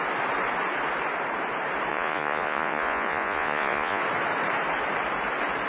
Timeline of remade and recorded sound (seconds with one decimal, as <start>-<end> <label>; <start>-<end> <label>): 0.0-1.9 recorded; 1.9-4.0 remade; 4.0-5.7 recorded